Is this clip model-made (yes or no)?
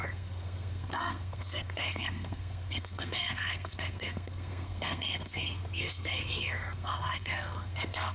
yes